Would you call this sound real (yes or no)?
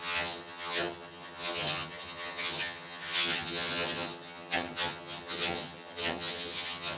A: no